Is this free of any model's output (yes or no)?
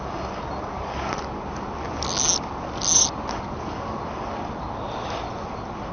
yes